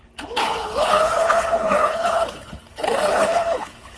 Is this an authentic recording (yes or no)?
no